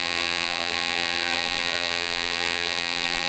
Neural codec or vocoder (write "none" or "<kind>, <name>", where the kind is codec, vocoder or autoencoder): vocoder, BigVGAN v2